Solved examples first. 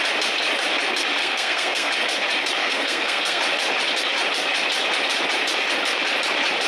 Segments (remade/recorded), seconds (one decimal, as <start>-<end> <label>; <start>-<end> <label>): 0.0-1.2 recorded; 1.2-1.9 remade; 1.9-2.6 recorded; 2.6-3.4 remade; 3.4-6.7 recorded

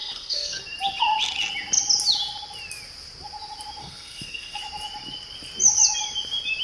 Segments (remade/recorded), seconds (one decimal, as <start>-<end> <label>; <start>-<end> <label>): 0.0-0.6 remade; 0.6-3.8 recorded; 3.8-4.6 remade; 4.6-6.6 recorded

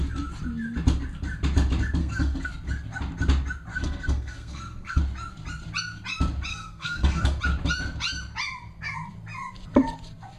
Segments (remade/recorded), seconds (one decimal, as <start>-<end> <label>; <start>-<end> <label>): 0.0-2.0 recorded; 2.0-2.5 remade; 2.5-3.7 recorded; 3.7-5.0 remade; 5.0-6.5 recorded; 6.5-7.4 remade; 7.4-10.4 recorded

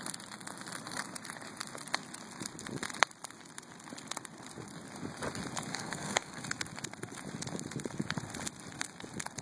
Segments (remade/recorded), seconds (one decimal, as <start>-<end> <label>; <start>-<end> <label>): 0.0-5.7 recorded; 5.7-6.4 remade; 6.4-9.4 recorded

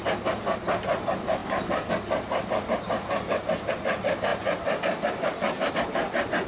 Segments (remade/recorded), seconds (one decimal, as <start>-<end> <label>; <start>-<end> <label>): 0.0-6.5 recorded

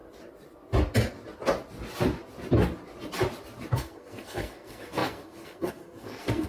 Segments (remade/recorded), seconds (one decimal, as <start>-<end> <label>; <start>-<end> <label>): 0.0-3.7 recorded; 3.7-6.5 remade